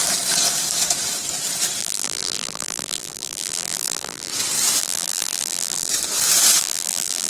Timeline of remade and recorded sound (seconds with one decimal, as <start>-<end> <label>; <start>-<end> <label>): 0.0-1.8 recorded; 1.8-4.3 remade; 4.3-4.8 recorded; 4.8-5.9 remade; 5.9-6.6 recorded; 6.6-7.3 remade